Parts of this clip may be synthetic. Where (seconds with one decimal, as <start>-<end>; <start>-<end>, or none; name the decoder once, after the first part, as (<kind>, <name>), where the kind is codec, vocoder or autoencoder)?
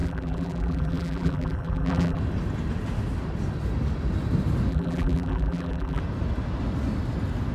0.0-2.2 (vocoder, BigVGAN v2); 4.7-6.0